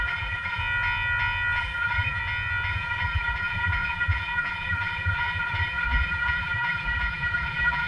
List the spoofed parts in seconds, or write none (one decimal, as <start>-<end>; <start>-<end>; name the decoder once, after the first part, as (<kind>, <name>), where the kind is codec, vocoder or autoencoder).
0.0-0.6 (vocoder, BigVGAN v2); 1.6-2.2; 2.7-7.9